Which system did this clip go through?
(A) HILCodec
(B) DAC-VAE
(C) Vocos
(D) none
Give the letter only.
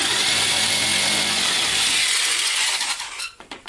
C